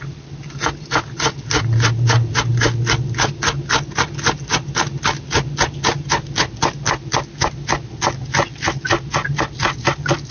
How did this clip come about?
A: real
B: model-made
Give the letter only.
A